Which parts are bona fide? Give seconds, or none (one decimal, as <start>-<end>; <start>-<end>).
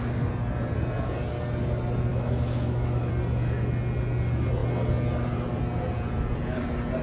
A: 0.0-2.1; 3.1-7.0